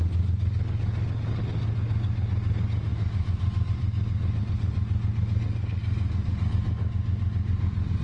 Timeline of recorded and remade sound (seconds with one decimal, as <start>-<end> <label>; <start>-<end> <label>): 0.0-2.9 recorded; 2.9-4.4 remade; 4.4-8.0 recorded